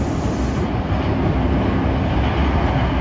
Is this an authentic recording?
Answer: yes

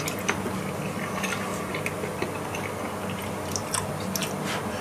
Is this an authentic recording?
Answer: yes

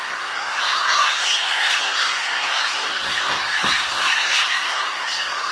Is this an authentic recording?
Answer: no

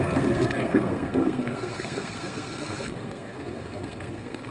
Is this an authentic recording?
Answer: no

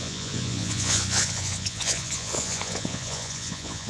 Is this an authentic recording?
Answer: no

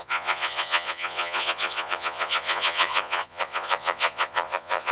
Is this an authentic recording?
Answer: no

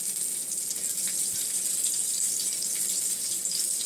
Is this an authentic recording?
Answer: yes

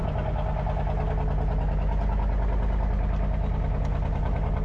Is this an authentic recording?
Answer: yes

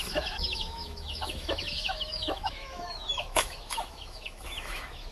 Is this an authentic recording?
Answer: no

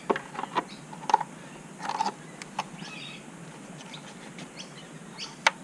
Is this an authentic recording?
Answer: yes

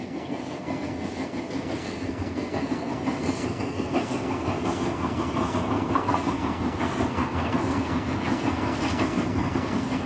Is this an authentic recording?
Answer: no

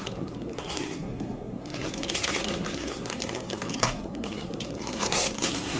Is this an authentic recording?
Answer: no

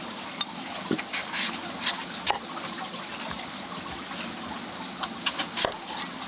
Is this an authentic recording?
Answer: yes